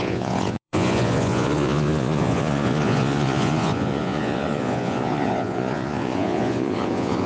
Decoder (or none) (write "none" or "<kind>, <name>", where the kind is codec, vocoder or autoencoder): vocoder, Vocos